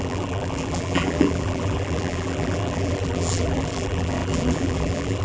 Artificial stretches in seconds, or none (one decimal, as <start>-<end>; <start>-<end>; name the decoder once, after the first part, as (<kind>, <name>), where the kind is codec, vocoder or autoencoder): 0.0-5.2 (vocoder, BigVGAN v2)